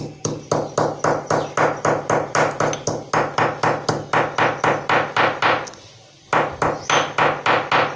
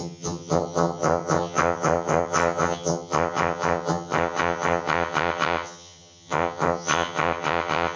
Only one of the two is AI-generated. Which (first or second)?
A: second